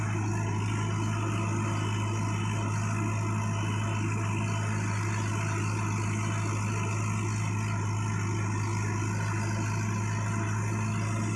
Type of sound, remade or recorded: recorded